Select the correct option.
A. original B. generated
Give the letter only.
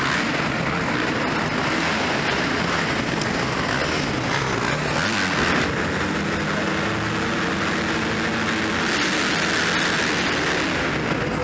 A